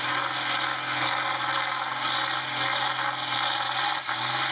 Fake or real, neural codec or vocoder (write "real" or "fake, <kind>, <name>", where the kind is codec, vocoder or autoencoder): real